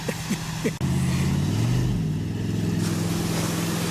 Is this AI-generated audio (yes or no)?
no